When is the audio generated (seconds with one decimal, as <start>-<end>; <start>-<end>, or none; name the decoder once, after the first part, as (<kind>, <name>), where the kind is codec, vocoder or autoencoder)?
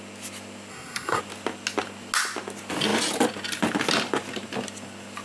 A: 0.7-1.2 (codec, SNAC)